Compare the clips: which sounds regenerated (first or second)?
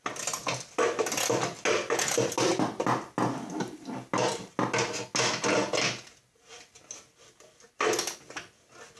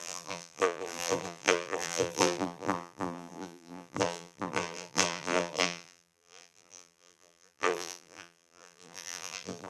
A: second